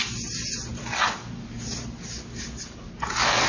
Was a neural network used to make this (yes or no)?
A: no